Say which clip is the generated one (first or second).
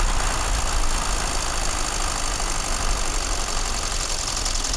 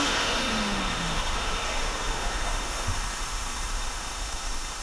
second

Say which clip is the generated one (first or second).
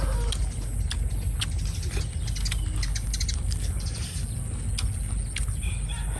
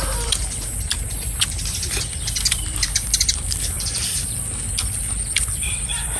second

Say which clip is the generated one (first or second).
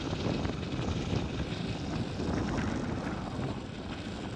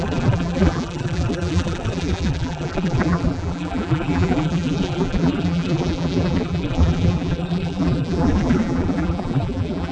second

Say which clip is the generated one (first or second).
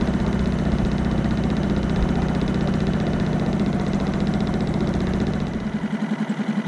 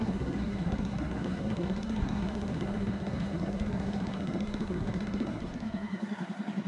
second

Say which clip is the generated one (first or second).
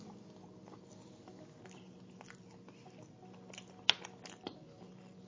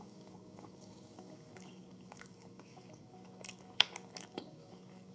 second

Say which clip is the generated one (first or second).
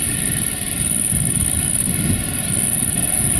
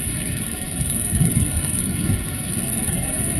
second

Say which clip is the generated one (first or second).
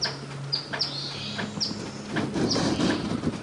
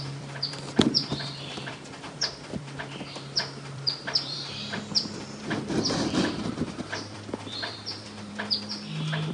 second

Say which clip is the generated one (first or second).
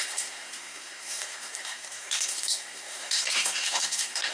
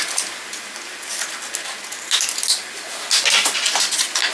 first